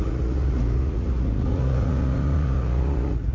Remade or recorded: remade